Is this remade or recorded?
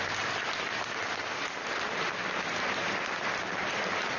recorded